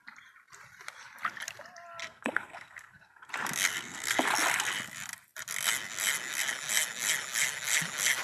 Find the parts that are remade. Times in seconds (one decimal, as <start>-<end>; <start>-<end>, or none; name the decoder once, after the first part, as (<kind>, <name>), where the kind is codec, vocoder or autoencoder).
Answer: 2.0-3.3 (codec, SNAC); 3.7-4.3